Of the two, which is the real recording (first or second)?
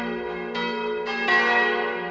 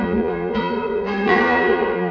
first